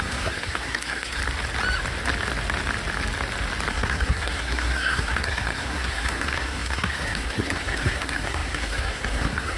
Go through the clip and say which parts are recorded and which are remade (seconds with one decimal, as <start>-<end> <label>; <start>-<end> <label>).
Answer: 0.0-1.2 remade; 1.2-3.7 recorded; 3.7-9.6 remade